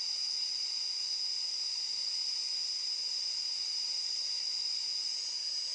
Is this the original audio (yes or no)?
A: yes